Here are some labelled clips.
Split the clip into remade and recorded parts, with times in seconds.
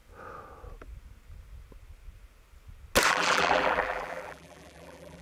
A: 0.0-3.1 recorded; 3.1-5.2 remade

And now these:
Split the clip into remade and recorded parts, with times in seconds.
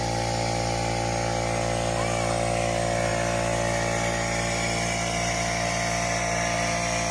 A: 0.0-7.1 recorded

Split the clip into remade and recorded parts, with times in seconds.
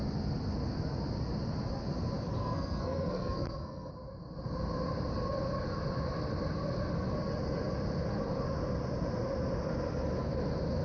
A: 0.0-2.4 recorded; 2.4-3.9 remade; 3.9-10.8 recorded